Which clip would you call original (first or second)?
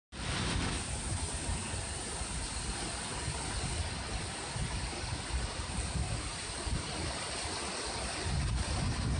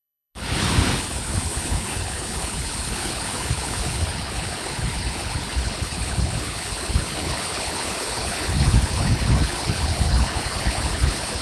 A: first